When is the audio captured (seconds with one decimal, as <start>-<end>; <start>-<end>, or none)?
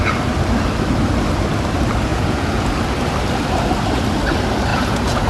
0.0-2.1; 2.7-4.7